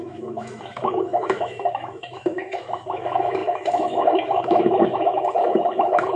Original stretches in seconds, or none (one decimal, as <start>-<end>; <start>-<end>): none